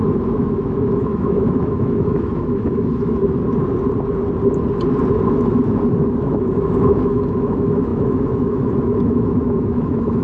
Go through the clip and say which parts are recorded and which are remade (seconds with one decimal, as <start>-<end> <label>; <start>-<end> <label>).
0.0-3.4 remade; 3.4-5.3 recorded; 5.3-10.2 remade